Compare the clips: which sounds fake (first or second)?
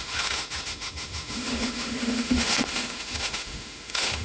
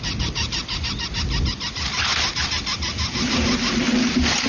first